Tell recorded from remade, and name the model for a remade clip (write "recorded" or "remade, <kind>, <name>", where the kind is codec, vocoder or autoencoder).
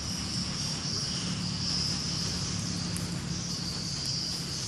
remade, vocoder, BigVGAN v2